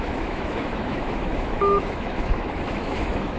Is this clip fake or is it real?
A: fake